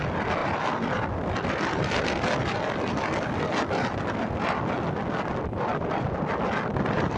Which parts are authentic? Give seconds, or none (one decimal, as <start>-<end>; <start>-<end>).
0.0-0.4; 1.9-5.7; 6.4-7.2